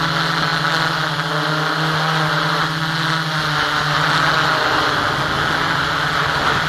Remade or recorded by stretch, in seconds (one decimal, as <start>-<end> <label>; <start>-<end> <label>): 0.0-6.7 recorded